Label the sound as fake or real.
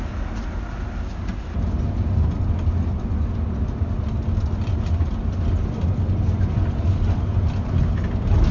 real